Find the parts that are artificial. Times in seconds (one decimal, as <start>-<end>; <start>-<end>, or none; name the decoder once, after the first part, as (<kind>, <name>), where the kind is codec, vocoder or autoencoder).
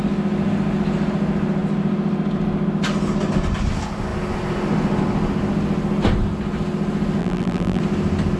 7.2-7.8 (vocoder, BigVGAN v2)